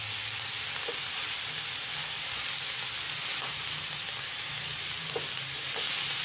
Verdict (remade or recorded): recorded